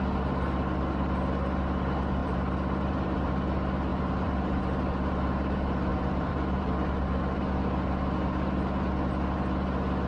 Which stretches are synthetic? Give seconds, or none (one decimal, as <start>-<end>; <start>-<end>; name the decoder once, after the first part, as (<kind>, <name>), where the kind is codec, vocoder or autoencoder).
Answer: 2.2-3.3 (vocoder, BigVGAN v2); 3.9-4.6; 5.9-7.2